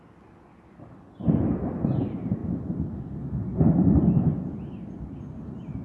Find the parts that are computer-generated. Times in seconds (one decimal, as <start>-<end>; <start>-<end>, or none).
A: none